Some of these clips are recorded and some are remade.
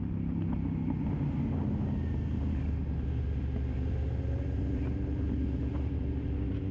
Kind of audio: recorded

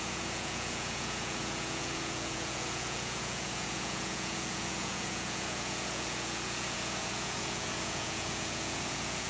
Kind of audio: remade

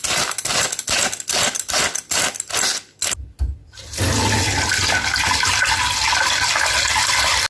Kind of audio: recorded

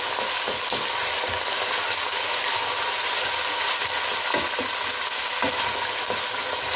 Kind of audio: recorded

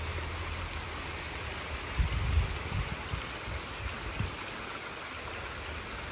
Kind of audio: recorded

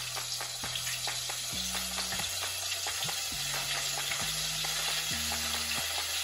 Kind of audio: recorded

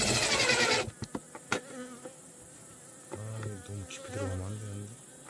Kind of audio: recorded